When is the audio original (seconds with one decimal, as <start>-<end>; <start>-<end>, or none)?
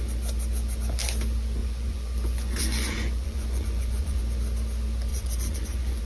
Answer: 0.0-1.6; 4.2-5.1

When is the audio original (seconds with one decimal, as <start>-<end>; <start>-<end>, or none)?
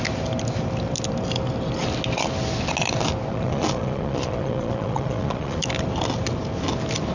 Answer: 0.0-3.3; 5.6-7.1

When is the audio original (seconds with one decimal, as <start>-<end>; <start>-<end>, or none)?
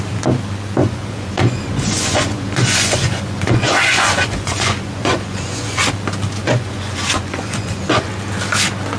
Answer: 0.0-0.8; 5.9-6.4; 8.1-9.0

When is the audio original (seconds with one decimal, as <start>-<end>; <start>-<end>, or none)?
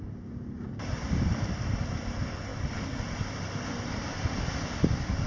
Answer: 0.0-5.3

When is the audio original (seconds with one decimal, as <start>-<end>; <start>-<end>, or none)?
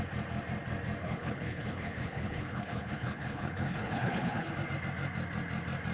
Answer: 0.0-1.0; 4.5-5.9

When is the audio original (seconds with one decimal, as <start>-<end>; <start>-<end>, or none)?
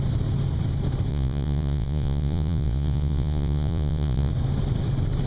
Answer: 0.0-1.1; 4.3-5.3